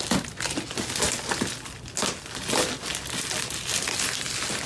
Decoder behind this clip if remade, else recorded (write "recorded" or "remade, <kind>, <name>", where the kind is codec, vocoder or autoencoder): recorded